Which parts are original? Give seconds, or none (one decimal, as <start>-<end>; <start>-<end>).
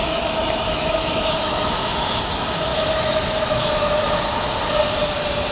2.2-2.7; 3.7-5.5